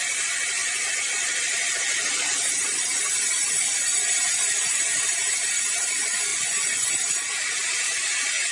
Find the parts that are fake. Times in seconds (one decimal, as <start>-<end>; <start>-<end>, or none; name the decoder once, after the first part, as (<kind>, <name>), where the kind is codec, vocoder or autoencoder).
6.3-6.9 (vocoder, Vocos)